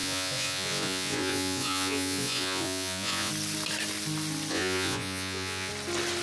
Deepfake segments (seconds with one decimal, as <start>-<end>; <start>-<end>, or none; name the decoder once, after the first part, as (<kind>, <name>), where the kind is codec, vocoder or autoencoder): 0.0-3.3 (vocoder, Vocos); 4.5-5.7